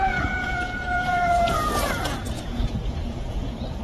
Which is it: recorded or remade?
remade